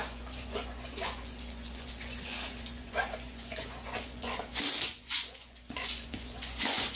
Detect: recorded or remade remade